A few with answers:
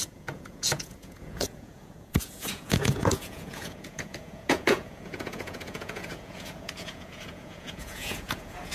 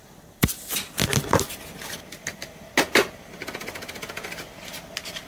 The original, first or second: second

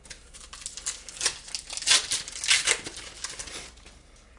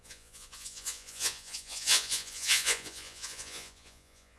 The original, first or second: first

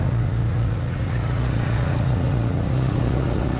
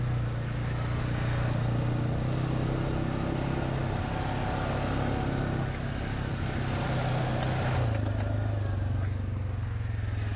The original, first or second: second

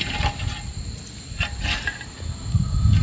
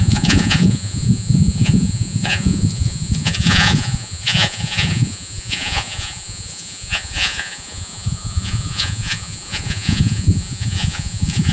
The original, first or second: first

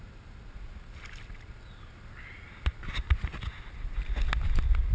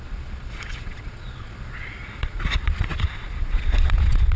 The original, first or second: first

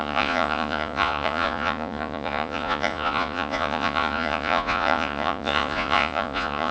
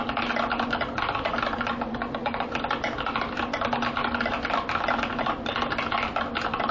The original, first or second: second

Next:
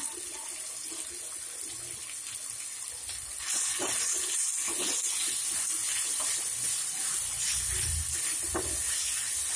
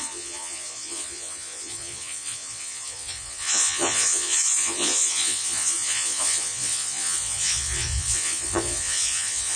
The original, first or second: first